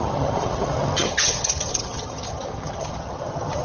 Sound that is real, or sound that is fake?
fake